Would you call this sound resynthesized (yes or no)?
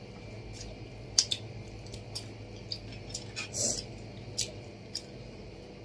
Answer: no